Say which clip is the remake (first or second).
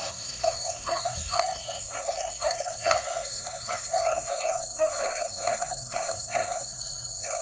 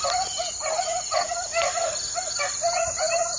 first